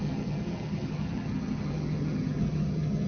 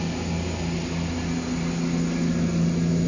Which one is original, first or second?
second